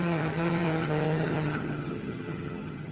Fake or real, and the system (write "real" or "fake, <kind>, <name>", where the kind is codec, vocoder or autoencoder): fake, vocoder, HiFi-GAN